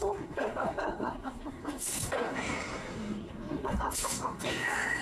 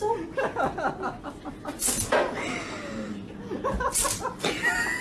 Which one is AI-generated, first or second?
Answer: first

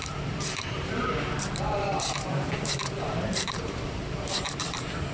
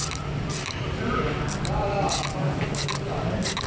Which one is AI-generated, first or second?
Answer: first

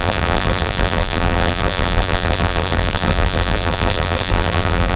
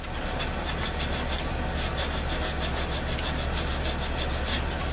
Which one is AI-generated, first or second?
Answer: first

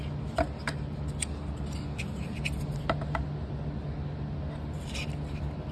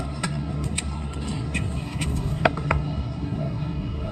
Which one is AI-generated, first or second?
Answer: second